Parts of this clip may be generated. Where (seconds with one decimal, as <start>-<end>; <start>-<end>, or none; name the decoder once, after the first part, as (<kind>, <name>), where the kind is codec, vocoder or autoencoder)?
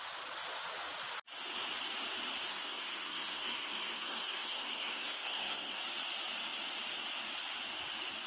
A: 2.5-5.8 (codec, SNAC)